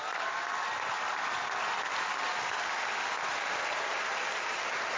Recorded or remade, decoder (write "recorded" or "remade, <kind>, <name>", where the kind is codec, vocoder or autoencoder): recorded